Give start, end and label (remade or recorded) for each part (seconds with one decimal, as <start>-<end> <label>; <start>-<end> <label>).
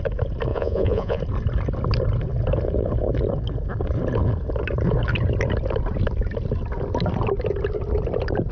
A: 0.0-0.5 recorded; 0.5-1.2 remade; 1.2-8.5 recorded